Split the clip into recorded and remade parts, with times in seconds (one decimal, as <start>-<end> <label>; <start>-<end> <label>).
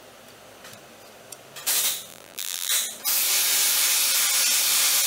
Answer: 0.0-2.1 recorded; 2.1-2.7 remade; 2.7-5.1 recorded